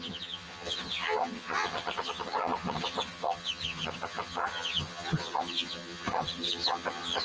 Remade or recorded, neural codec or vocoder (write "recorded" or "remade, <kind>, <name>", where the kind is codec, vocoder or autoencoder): remade, vocoder, HiFi-GAN